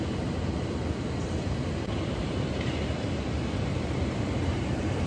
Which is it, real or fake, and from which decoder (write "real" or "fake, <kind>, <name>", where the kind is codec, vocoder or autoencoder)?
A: fake, vocoder, BigVGAN v2